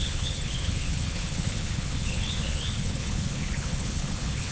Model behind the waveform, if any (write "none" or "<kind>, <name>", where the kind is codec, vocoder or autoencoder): codec, HILCodec